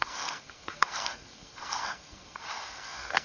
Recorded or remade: remade